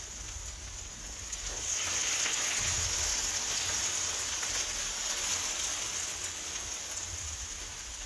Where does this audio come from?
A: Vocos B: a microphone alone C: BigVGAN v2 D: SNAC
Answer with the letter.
B